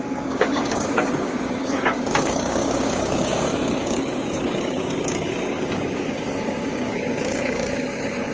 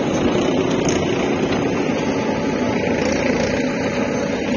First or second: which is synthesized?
first